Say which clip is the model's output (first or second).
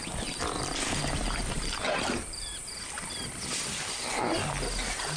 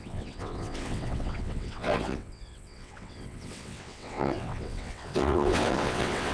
second